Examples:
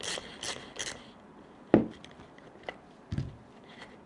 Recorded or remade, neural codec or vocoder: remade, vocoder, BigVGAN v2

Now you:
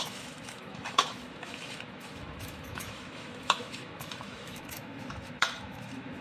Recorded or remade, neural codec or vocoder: remade, autoencoder, DAC-VAE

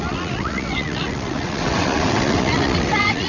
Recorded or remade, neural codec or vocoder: remade, vocoder, WaveNeXt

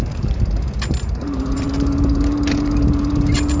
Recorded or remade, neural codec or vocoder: recorded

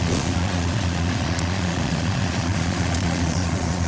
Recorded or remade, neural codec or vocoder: remade, vocoder, Vocos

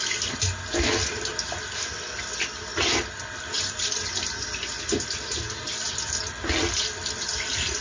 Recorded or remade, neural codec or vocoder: recorded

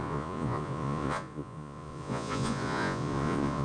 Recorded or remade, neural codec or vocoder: remade, vocoder, Vocos